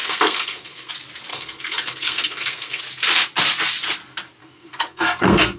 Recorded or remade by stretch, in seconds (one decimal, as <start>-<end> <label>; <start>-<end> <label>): 0.0-0.9 remade; 0.9-1.3 recorded; 1.3-2.8 remade; 2.8-4.4 recorded; 4.4-5.6 remade